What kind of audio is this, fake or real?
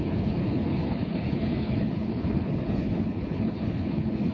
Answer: fake